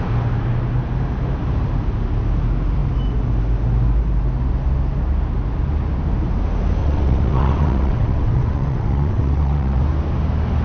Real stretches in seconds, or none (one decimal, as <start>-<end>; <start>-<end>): 0.0-6.8; 9.8-10.6